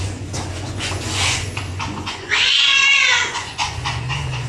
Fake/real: fake